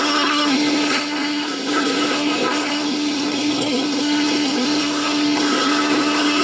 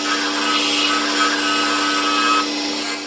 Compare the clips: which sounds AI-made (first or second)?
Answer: first